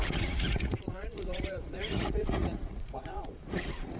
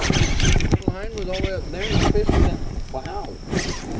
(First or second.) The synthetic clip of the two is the first